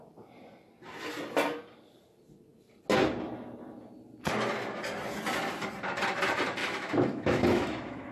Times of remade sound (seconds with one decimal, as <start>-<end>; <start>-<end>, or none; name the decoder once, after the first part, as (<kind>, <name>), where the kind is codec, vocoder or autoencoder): 6.6-8.1 (autoencoder, DAC-VAE)